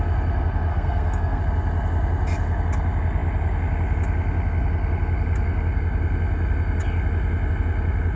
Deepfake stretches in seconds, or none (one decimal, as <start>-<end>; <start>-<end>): 0.7-1.4

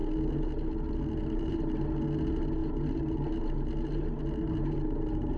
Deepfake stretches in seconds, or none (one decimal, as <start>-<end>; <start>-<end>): 1.2-1.9; 2.6-5.4

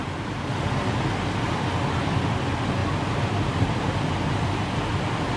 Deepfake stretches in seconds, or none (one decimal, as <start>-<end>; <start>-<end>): none

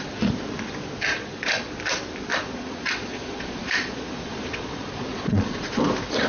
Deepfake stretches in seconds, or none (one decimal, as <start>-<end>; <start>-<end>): 1.1-1.7; 2.3-5.8

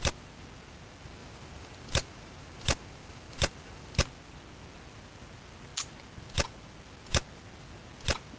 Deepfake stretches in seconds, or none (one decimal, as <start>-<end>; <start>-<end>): 1.2-4.0

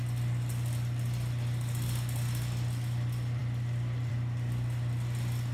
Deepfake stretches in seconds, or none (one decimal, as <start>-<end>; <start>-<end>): none

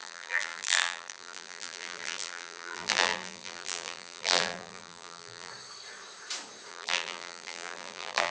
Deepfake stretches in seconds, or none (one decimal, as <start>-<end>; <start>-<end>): 0.0-5.5; 6.7-8.3

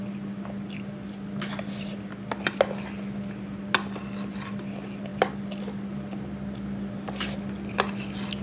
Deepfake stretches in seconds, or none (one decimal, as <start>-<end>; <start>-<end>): none